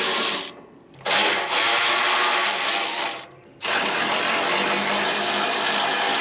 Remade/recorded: recorded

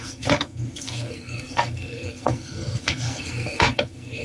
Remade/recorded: remade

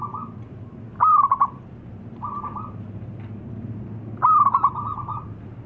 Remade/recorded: recorded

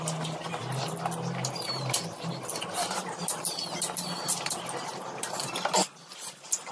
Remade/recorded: recorded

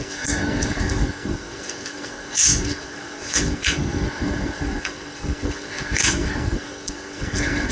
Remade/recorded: remade